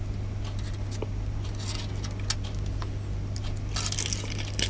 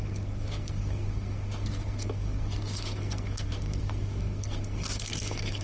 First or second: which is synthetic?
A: second